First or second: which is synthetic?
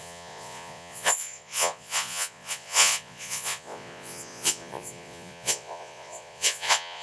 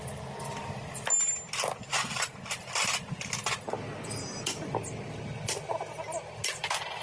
first